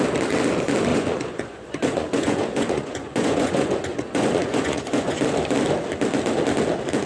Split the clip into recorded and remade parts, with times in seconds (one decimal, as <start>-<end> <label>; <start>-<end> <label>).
0.0-0.9 recorded; 0.9-5.2 remade; 5.2-7.1 recorded